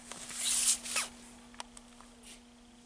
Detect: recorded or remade recorded